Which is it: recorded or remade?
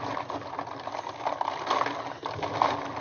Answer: recorded